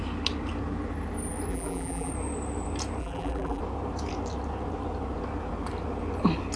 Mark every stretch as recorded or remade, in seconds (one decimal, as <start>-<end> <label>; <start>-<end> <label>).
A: 0.0-1.5 recorded; 1.5-2.1 remade; 2.1-3.0 recorded; 3.0-3.6 remade; 3.6-6.6 recorded